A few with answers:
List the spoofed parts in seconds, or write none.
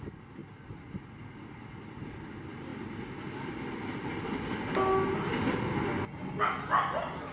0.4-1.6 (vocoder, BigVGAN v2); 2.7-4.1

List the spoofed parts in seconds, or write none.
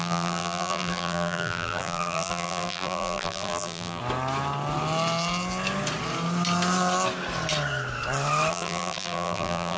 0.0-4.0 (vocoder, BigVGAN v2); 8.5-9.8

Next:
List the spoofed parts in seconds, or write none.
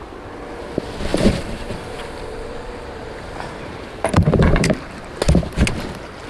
1.1-4.9 (vocoder, BigVGAN v2)